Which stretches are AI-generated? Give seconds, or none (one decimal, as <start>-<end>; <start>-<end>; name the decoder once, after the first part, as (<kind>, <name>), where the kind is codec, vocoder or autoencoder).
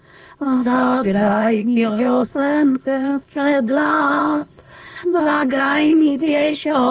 0.0-6.9 (codec, ZipCodec)